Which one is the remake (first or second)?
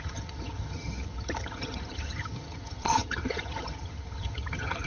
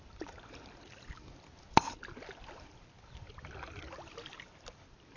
first